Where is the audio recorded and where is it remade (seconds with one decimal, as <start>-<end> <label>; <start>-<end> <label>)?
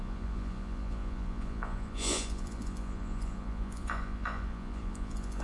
0.0-5.4 remade